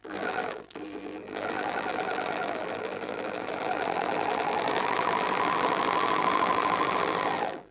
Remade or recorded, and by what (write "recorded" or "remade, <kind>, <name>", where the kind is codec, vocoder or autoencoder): remade, vocoder, BigVGAN v2